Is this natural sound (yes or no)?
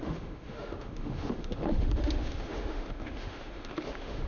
no